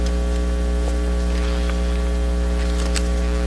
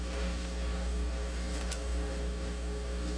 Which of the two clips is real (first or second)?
first